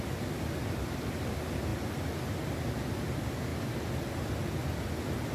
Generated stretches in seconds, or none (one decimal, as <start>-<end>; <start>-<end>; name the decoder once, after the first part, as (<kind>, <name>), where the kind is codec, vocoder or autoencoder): none